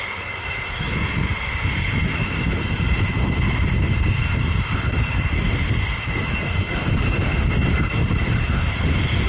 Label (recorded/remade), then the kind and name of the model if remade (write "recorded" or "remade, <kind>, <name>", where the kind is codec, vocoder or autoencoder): recorded